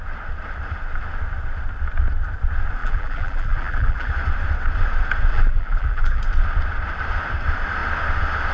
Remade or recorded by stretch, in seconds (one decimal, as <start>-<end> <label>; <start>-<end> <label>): 0.0-2.8 recorded; 2.8-4.1 remade; 4.1-5.3 recorded; 5.3-6.2 remade; 6.2-8.5 recorded